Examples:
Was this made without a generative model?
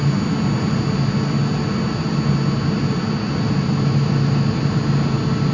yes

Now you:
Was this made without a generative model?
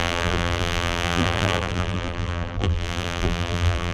no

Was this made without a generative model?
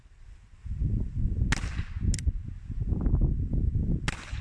yes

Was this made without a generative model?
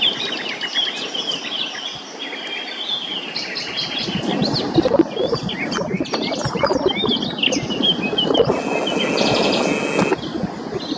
yes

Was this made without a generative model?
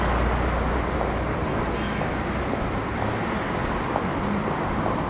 yes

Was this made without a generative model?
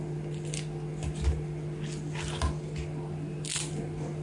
yes